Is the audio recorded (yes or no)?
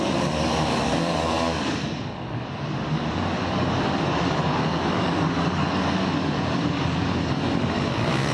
no